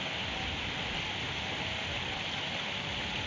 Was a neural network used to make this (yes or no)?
no